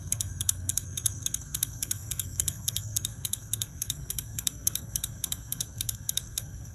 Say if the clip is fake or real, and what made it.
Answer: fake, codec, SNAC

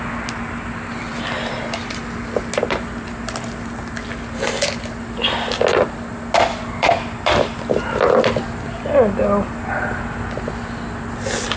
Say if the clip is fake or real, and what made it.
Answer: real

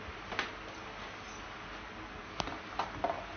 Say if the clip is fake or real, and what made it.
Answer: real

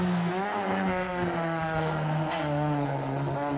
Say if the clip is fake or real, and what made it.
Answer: fake, codec, SNAC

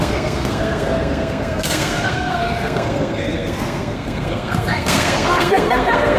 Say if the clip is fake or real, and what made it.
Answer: fake, codec, SNAC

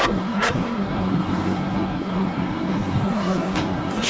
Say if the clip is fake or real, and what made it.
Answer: fake, codec, SNAC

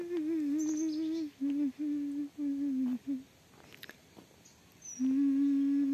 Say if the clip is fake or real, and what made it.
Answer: real